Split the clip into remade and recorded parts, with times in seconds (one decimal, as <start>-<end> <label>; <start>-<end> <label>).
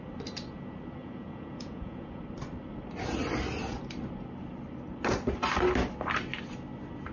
0.0-1.0 recorded; 1.0-2.2 remade; 2.2-7.1 recorded